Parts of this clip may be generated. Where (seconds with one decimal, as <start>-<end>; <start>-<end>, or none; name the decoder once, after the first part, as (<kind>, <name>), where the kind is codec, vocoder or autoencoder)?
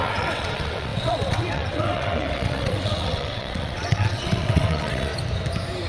0.0-5.1 (vocoder, WaveNeXt)